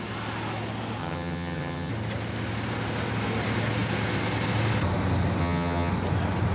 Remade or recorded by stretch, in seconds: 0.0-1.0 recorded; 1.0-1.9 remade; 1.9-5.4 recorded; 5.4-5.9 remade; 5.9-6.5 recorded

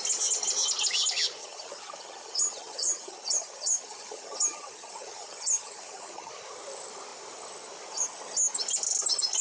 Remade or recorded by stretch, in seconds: 0.0-1.4 recorded; 1.4-6.3 remade; 6.3-9.4 recorded

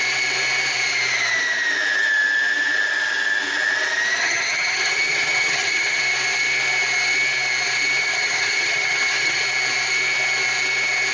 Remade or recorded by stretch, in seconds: 0.0-4.2 recorded; 4.2-6.0 remade; 6.0-8.0 recorded; 8.0-9.4 remade; 9.4-11.1 recorded

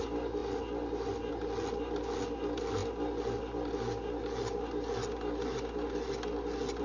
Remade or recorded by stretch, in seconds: 0.0-6.8 recorded

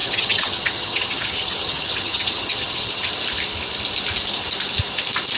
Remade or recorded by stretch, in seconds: 0.0-3.1 remade; 3.1-5.4 recorded

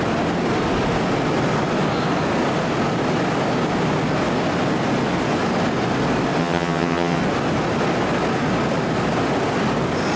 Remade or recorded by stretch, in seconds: 0.0-6.4 recorded; 6.4-7.2 remade; 7.2-10.2 recorded

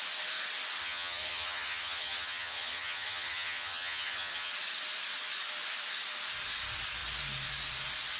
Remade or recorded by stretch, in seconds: 0.0-0.8 recorded; 0.8-4.5 remade; 4.5-8.2 recorded